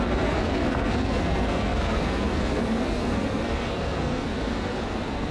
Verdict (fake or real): fake